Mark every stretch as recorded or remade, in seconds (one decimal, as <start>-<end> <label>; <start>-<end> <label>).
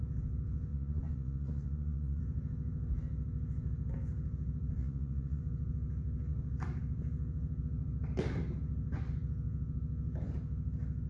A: 0.0-0.7 recorded; 0.7-2.2 remade; 2.2-4.8 recorded; 4.8-5.4 remade; 5.4-11.1 recorded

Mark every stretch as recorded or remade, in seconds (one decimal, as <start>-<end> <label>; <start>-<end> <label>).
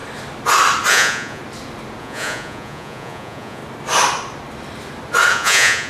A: 0.0-0.9 recorded; 0.9-1.4 remade; 1.4-2.0 recorded; 2.0-3.6 remade; 3.6-5.3 recorded; 5.3-5.9 remade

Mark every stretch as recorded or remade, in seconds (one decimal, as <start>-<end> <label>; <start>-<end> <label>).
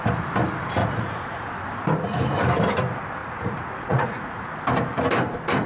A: 0.0-0.8 recorded; 0.8-1.5 remade; 1.5-3.2 recorded; 3.2-4.4 remade; 4.4-5.7 recorded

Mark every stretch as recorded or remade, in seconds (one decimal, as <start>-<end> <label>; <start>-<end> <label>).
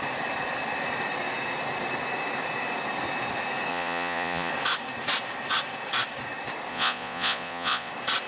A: 0.0-3.7 recorded; 3.7-4.5 remade; 4.5-6.7 recorded; 6.7-7.9 remade; 7.9-8.3 recorded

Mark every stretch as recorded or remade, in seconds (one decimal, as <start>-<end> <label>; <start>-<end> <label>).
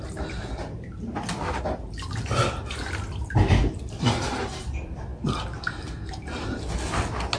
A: 0.0-7.4 recorded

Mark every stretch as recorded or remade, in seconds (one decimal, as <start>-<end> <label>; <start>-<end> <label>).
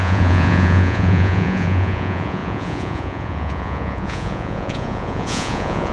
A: 0.0-5.9 remade